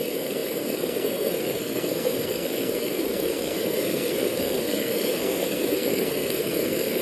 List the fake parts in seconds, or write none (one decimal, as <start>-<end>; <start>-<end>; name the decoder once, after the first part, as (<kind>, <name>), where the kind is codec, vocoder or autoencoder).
0.0-7.0 (codec, SNAC)

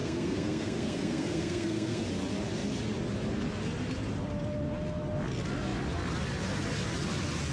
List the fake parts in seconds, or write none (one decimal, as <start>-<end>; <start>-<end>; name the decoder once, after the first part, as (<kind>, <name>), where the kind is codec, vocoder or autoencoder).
0.0-2.0 (codec, SNAC)

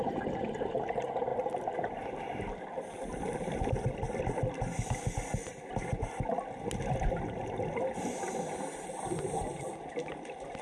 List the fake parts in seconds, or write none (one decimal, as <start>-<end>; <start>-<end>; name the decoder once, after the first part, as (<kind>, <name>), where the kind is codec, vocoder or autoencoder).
none

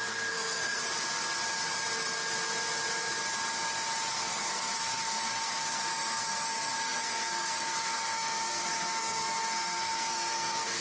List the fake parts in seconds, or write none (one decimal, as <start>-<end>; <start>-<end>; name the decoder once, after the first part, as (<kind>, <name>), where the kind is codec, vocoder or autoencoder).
0.0-0.8 (codec, SNAC); 4.1-10.8

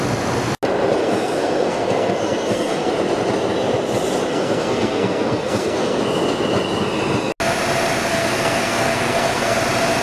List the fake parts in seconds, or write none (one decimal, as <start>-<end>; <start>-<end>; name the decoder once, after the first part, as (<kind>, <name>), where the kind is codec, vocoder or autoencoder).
1.0-2.9 (codec, SNAC); 4.3-6.0; 8.1-9.6

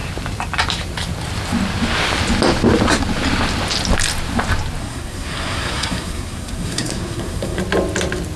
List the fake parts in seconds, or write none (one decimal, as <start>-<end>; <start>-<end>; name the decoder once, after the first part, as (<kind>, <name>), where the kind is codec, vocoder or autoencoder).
4.8-7.6 (codec, SNAC)

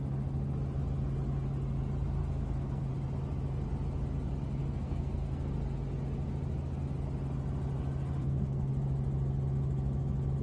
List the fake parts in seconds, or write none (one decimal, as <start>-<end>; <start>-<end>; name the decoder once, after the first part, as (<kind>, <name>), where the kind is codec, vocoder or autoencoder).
2.2-2.9 (codec, SNAC); 4.6-5.5; 8.2-8.7